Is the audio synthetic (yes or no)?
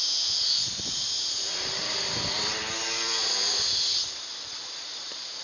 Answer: yes